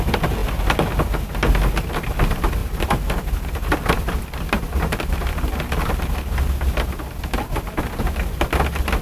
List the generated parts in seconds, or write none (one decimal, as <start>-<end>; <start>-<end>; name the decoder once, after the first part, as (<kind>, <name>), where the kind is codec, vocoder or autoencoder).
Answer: 2.6-5.9 (vocoder, BigVGAN v2)